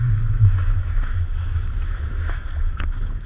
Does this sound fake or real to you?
fake